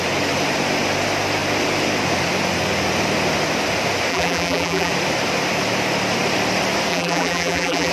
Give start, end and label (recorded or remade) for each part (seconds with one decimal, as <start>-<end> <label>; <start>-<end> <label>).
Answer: 0.0-4.1 recorded; 4.1-4.9 remade; 4.9-6.9 recorded; 6.9-7.9 remade